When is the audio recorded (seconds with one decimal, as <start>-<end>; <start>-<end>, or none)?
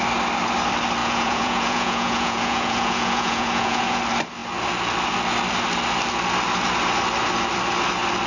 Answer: 0.0-1.0; 4.0-8.3